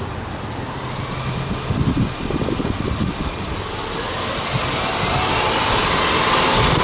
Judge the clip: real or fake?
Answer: real